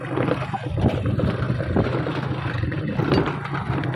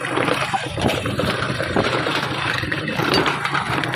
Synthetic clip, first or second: second